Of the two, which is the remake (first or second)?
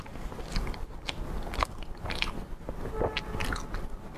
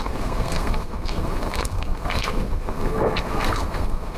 second